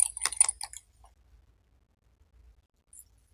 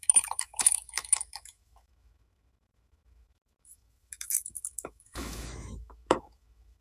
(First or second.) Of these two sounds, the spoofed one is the second